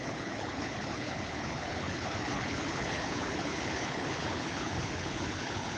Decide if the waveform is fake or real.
fake